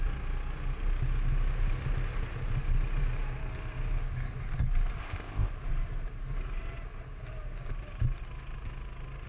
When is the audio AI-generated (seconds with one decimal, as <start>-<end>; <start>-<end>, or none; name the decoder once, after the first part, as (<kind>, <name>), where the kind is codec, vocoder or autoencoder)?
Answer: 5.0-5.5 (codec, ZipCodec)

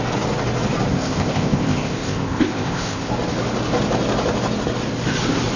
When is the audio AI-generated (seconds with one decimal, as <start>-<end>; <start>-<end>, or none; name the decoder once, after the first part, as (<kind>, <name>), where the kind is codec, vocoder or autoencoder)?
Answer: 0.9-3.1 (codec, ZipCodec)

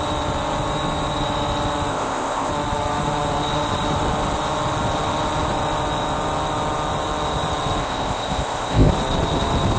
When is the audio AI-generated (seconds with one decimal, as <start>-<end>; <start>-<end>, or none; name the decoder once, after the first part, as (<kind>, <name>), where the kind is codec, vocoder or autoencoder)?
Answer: 1.9-2.5 (codec, ZipCodec); 7.8-8.9

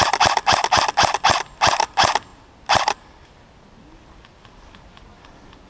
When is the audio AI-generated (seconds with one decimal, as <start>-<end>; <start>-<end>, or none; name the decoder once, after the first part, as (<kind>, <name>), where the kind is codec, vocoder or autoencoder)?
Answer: none

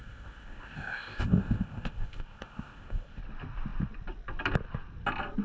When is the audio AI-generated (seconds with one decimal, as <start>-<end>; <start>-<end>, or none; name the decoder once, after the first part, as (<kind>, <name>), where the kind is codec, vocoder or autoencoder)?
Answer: 0.0-3.2 (codec, ZipCodec)